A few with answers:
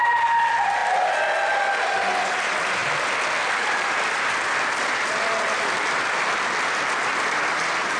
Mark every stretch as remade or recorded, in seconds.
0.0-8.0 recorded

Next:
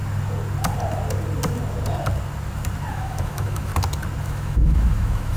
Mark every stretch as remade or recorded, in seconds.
0.0-2.9 recorded; 2.9-3.7 remade; 3.7-4.2 recorded; 4.2-5.4 remade